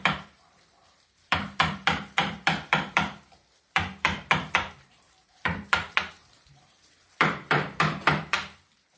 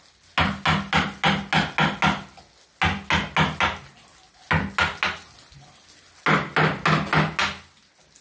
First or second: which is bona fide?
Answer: second